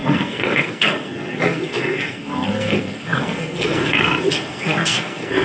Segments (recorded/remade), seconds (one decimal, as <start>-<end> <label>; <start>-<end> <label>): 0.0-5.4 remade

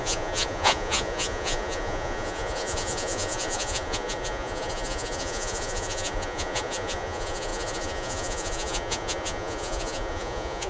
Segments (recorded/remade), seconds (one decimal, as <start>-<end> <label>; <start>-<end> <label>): 0.0-10.7 remade

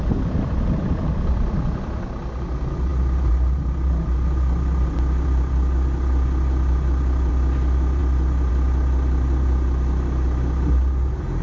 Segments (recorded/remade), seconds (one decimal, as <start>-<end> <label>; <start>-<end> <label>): 0.0-11.4 recorded

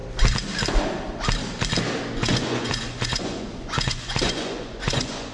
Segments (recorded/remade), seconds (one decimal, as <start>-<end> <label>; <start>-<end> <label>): 0.0-2.2 recorded; 2.2-5.3 remade